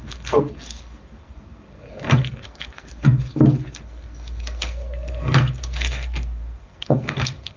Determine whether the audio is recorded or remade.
remade